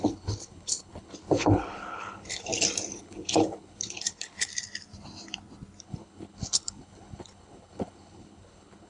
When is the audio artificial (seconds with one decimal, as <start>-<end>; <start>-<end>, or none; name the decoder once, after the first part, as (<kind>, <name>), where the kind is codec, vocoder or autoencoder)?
0.0-2.5 (codec, HILCodec); 3.0-4.5; 5.8-8.9